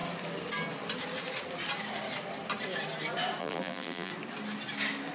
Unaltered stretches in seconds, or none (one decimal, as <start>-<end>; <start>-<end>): 0.0-3.4; 4.1-5.1